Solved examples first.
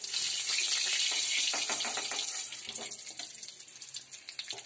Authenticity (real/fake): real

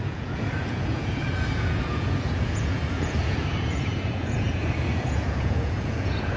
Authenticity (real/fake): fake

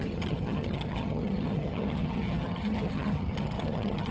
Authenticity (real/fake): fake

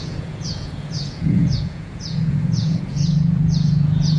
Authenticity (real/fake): fake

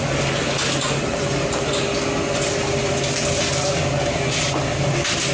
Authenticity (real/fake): real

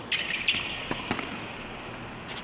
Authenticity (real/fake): real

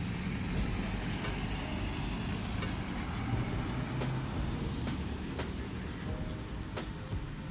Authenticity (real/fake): real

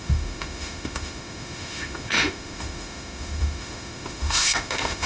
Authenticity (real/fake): fake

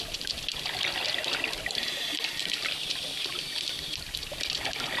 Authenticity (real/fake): real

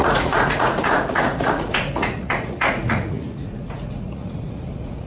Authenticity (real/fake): fake